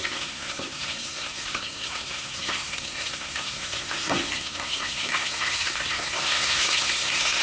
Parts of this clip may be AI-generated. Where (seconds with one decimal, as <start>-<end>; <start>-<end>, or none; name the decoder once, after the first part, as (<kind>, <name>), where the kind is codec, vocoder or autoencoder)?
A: 0.0-7.4 (codec, SNAC)